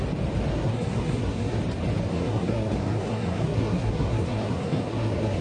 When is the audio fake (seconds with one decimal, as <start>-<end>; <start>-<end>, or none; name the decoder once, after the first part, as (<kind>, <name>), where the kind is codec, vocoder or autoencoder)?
0.5-1.6 (codec, SNAC); 2.1-5.4